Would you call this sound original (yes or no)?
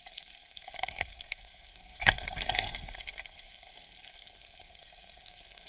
no